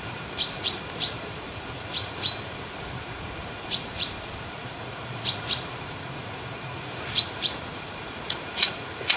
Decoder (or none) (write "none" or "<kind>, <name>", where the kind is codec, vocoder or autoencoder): vocoder, Vocos